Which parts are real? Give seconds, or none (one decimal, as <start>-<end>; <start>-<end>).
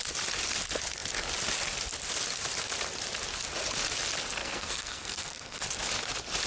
0.0-4.4; 5.6-6.5